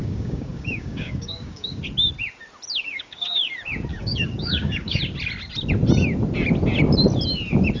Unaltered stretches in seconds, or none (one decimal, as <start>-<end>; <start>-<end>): 1.8-2.8; 3.5-3.9; 5.0-7.8